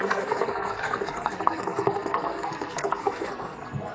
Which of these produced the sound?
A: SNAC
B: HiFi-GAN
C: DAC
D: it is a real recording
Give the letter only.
A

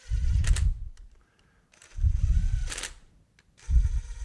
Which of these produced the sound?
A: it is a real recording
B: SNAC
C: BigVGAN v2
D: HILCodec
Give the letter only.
A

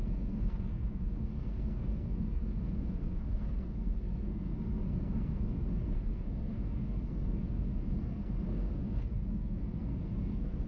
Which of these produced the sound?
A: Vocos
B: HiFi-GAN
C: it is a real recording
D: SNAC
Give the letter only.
D